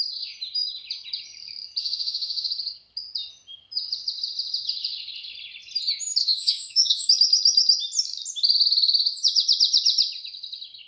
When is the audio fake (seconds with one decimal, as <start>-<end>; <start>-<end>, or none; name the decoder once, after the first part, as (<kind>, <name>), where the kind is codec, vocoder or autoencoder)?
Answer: 1.8-2.5 (autoencoder, DAC-VAE); 6.2-7.1